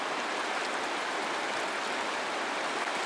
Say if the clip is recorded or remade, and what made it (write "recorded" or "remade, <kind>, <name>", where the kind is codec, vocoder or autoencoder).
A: recorded